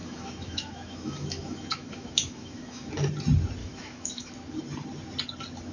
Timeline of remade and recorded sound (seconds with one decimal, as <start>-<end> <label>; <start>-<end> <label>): 0.0-2.9 remade; 2.9-3.6 recorded; 3.6-4.3 remade; 4.3-5.7 recorded